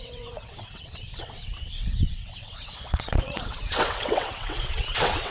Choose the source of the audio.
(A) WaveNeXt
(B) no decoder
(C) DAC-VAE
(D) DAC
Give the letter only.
A